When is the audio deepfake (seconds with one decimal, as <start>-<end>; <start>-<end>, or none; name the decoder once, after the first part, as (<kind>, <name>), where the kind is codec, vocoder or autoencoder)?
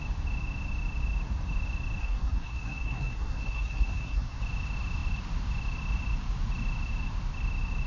2.0-4.4 (codec, SNAC)